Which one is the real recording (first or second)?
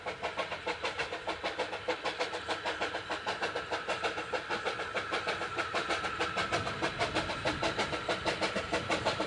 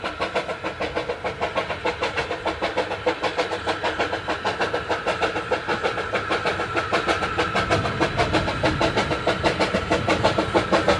second